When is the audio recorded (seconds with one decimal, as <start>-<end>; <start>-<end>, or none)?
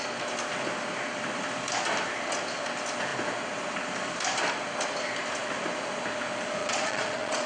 0.0-6.6